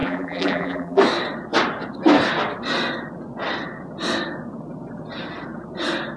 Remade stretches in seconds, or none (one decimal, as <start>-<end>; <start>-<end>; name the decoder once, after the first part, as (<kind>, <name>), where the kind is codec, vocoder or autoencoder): 0.0-1.0 (vocoder, BigVGAN v2)